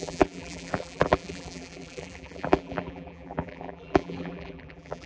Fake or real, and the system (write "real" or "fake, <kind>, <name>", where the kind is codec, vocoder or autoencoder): fake, vocoder, BigVGAN v2